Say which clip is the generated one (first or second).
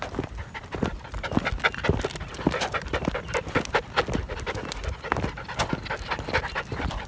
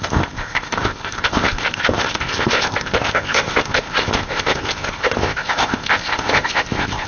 second